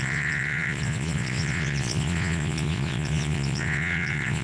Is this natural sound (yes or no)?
no